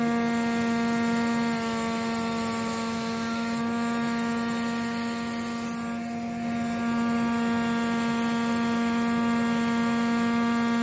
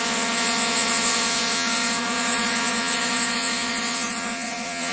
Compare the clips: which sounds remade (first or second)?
second